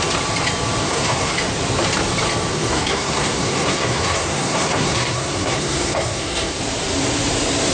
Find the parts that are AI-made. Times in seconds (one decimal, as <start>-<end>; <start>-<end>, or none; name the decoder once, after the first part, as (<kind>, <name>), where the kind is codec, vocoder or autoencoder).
0.8-1.3 (codec, SNAC); 2.5-6.6